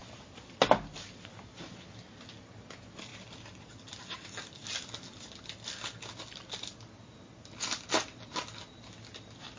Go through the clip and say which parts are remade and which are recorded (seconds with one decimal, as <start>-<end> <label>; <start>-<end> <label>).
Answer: 0.0-9.6 recorded